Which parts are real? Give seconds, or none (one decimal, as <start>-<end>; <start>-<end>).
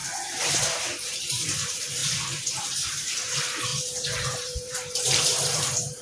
0.0-0.8; 2.0-2.5